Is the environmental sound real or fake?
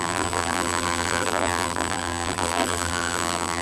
fake